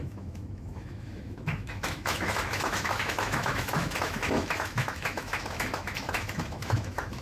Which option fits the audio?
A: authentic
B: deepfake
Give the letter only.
B